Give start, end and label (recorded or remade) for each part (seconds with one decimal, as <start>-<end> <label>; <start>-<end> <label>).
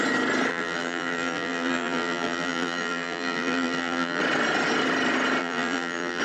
0.0-0.5 recorded; 0.5-4.2 remade; 4.2-5.4 recorded; 5.4-6.2 remade